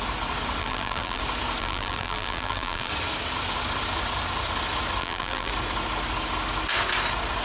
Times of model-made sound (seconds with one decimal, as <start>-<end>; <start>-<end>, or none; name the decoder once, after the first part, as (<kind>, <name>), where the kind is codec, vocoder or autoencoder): 0.6-1.2 (vocoder, BigVGAN v2); 1.6-2.9; 5.0-5.5